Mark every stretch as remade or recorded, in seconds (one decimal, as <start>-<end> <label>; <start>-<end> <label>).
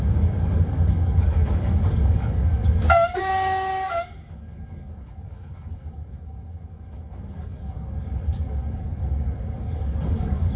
0.0-10.6 remade